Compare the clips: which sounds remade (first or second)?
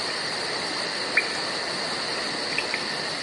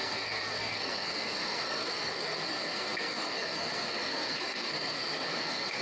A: second